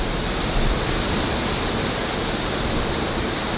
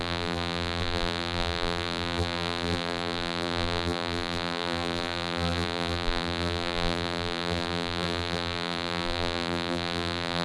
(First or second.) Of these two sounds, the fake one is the second